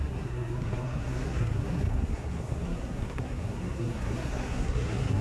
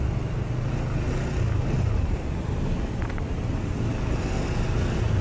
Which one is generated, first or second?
first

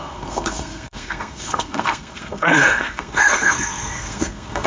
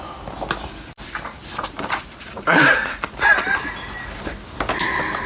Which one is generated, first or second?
first